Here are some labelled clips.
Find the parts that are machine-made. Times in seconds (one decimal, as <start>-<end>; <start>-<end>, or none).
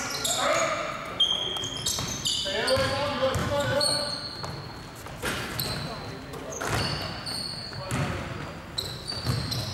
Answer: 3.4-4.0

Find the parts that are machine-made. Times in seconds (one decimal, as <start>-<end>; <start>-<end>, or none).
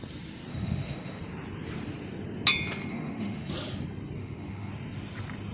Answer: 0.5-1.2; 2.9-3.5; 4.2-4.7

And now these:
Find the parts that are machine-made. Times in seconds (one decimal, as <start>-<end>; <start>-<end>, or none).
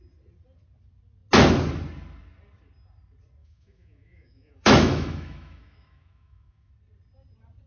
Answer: 3.4-6.7